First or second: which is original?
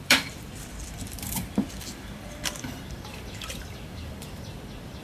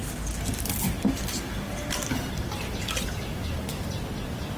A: second